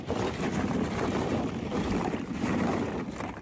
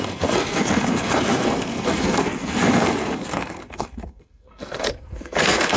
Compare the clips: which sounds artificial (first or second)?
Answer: second